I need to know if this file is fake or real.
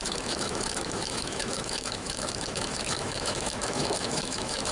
fake